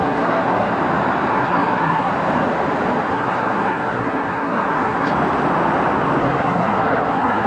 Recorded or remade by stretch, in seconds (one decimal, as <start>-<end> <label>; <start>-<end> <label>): 0.0-0.7 remade; 0.7-1.3 recorded; 1.3-2.1 remade; 2.1-3.1 recorded; 3.1-5.1 remade; 5.1-6.2 recorded; 6.2-7.5 remade